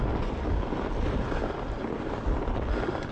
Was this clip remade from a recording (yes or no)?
no